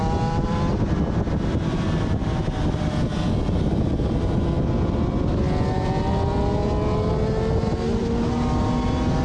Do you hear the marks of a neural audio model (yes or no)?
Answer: no